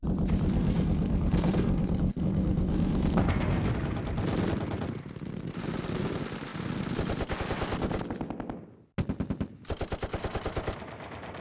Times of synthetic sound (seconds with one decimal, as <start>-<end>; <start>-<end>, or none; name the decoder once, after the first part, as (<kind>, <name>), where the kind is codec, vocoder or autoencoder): 0.5-3.7 (codec, SNAC)